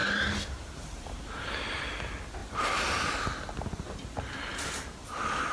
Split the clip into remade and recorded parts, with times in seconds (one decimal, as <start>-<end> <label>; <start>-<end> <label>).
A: 0.0-1.2 remade; 1.2-2.4 recorded; 2.4-3.0 remade; 3.0-5.5 recorded